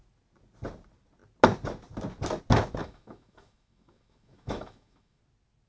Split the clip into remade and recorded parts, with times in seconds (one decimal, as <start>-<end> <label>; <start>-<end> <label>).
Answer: 0.0-2.8 recorded; 2.8-5.2 remade; 5.2-5.7 recorded